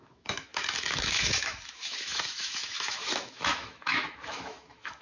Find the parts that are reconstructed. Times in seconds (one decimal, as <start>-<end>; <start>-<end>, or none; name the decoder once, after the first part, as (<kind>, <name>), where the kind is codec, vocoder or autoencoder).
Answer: 0.0-5.0 (autoencoder, DAC-VAE)